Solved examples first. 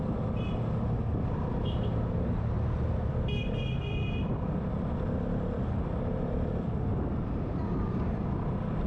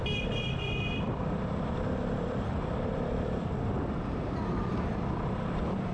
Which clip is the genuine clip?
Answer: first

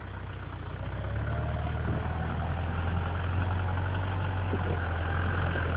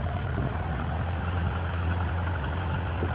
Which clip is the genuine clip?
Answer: first